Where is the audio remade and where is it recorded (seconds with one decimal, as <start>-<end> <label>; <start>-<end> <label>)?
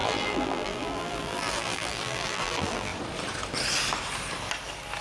0.0-2.9 remade; 2.9-5.0 recorded